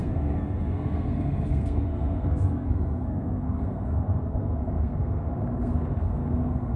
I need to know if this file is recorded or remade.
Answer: remade